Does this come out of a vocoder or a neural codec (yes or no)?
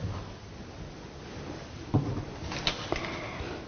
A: no